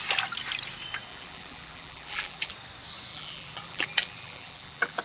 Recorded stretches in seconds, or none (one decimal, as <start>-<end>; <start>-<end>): 0.0-1.1; 2.5-3.1